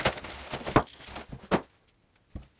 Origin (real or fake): real